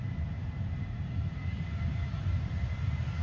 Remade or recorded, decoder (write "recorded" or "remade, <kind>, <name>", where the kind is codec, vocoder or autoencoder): remade, vocoder, BigVGAN v2